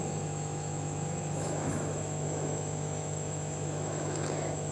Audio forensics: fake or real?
fake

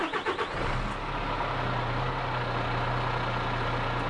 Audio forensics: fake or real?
real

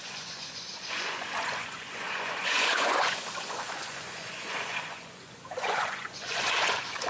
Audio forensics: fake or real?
fake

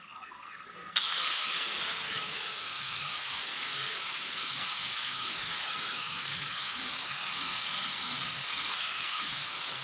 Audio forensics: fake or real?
fake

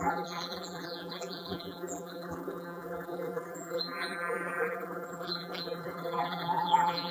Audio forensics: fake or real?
fake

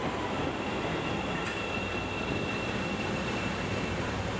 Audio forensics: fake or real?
fake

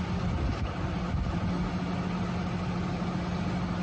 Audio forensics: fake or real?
real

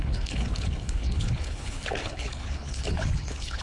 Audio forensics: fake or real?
fake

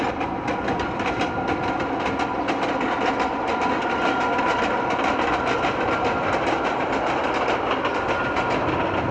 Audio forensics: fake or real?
real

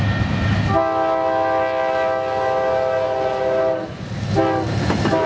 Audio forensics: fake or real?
real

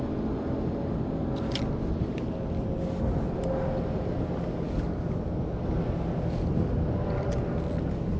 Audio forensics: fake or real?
real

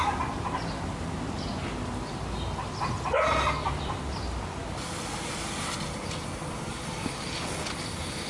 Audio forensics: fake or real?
real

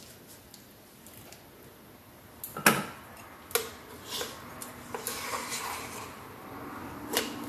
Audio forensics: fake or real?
real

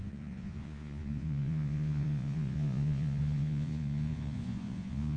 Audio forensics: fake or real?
fake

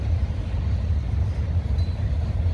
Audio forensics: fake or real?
real